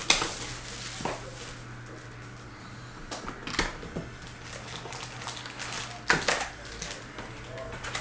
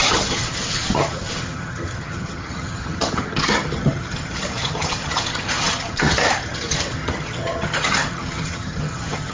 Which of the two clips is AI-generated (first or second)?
second